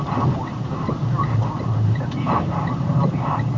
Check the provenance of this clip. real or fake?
fake